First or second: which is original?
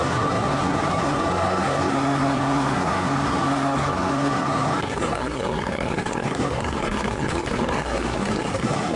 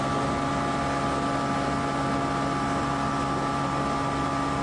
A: second